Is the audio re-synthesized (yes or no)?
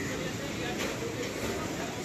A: no